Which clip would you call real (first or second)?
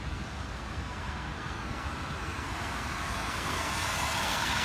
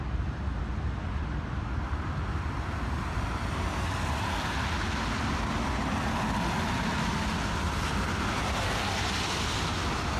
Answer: second